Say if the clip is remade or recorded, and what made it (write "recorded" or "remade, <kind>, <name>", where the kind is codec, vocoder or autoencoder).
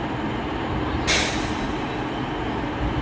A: recorded